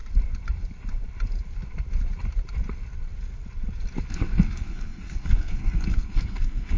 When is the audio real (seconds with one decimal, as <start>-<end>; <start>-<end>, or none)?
0.0-4.1